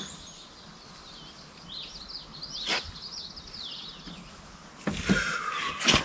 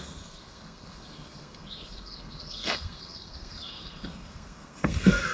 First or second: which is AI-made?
second